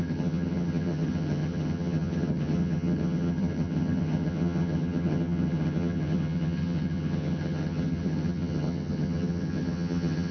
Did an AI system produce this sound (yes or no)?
yes